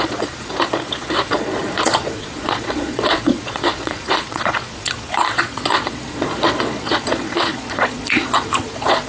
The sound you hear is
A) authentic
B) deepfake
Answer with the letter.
B